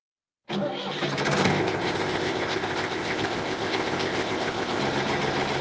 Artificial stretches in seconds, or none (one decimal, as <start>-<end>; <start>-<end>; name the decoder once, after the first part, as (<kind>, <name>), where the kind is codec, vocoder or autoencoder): 1.4-4.8 (codec, ZipCodec)